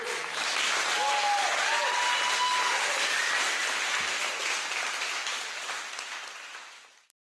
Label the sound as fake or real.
real